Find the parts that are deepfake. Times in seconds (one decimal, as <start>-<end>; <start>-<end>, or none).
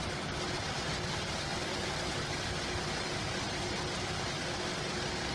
none